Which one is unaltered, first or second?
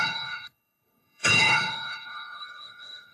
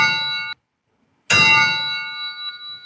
second